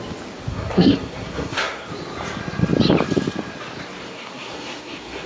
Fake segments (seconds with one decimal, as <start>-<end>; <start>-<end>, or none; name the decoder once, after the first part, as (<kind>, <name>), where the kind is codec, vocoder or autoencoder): 0.5-1.9 (codec, SNAC); 4.0-5.3